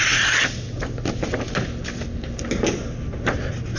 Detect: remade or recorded recorded